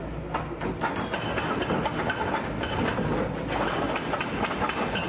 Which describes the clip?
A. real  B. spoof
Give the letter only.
A